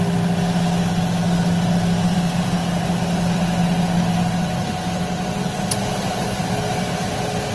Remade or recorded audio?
recorded